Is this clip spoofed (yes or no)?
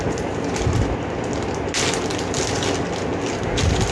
no